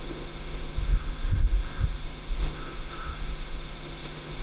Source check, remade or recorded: remade